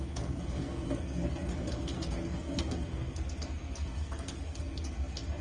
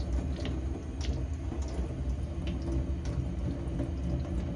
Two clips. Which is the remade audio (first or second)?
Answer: first